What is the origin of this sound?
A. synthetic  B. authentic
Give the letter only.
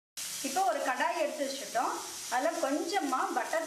B